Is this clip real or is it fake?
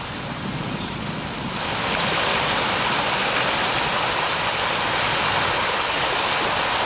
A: real